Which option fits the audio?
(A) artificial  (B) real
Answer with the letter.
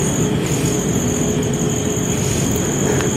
B